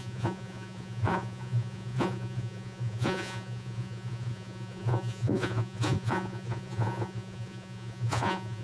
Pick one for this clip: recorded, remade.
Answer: remade